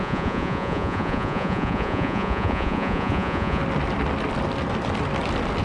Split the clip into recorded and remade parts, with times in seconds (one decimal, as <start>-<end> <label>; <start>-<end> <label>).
0.0-3.6 remade; 3.6-5.6 recorded